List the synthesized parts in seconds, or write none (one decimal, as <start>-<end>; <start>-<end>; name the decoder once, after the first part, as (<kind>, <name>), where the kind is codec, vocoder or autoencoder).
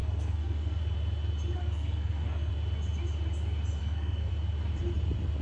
0.0-0.8 (codec, SNAC); 1.6-2.5; 3.8-4.3